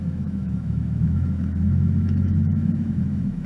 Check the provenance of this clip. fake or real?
fake